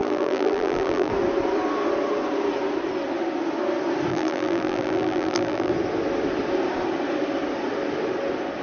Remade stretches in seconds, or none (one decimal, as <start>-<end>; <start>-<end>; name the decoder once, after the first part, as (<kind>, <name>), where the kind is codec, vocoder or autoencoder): 0.0-1.1 (vocoder, BigVGAN v2); 4.1-5.7